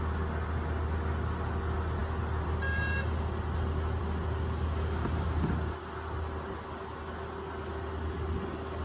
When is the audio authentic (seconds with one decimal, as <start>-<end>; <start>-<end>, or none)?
0.0-8.8